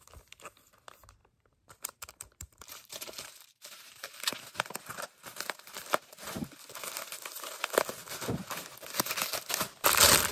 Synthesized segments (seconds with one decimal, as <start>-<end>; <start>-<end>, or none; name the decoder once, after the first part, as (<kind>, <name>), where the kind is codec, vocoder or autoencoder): 1.2-5.9 (vocoder, BigVGAN v2)